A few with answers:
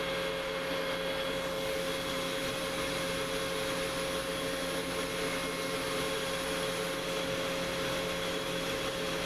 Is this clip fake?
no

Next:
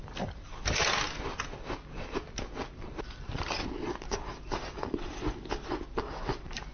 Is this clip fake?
no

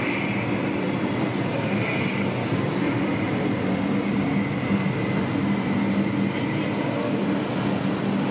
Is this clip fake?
no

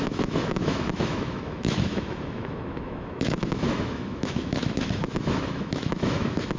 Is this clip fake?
yes